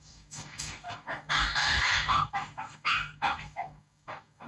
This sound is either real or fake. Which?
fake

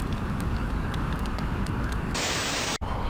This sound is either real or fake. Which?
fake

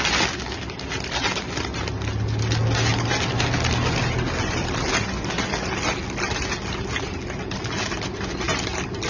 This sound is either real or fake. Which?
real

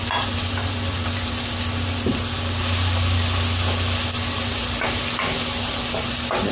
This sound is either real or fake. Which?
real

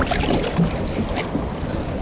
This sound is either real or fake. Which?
real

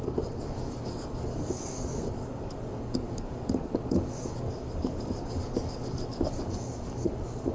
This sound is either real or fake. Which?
fake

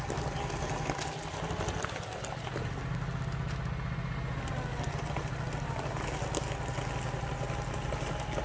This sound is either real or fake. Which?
real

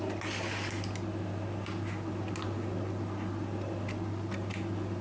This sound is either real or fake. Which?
real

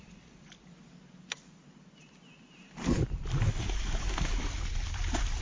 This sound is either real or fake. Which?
real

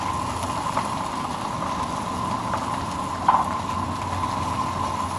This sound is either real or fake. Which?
real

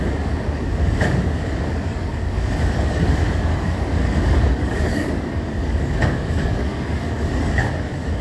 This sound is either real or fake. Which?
fake